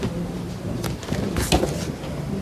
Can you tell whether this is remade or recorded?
recorded